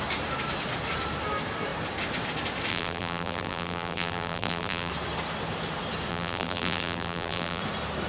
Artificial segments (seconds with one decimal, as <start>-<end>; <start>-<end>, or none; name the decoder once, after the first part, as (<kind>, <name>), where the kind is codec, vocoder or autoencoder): 2.7-4.9 (vocoder, BigVGAN v2); 6.1-7.6